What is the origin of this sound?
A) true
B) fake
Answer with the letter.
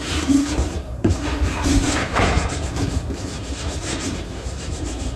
B